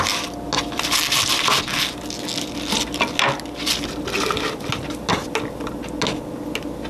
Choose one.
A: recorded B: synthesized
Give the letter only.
A